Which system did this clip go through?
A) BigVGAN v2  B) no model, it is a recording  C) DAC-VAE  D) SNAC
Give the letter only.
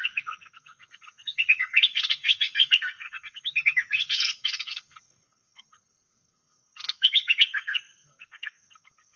D